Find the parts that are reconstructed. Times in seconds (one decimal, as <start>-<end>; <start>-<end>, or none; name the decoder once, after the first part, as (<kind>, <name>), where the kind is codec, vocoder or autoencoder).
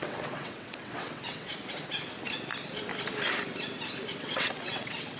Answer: 0.0-1.5 (vocoder, WaveNeXt); 4.2-5.2